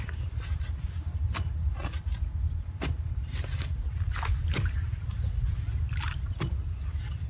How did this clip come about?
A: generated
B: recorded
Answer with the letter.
B